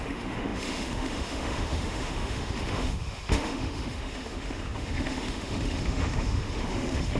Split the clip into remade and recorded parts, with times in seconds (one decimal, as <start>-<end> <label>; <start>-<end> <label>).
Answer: 0.0-7.2 remade